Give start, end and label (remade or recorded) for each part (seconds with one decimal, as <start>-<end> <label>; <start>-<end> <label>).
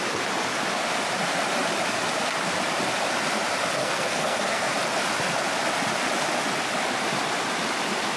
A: 0.0-3.8 recorded; 3.8-4.7 remade; 4.7-8.2 recorded